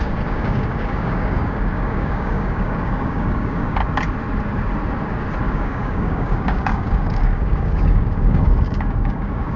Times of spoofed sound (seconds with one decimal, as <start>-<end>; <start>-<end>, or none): 0.0-3.8; 5.4-9.6